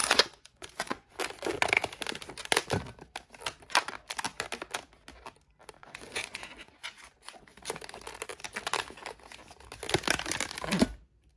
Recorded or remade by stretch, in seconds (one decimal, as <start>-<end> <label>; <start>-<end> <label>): 0.0-1.1 remade; 1.1-5.8 recorded; 5.8-7.6 remade; 7.6-11.4 recorded